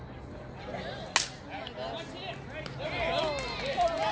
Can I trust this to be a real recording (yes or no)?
yes